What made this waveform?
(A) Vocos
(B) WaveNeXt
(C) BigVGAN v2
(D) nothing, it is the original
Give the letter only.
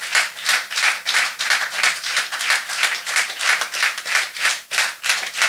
C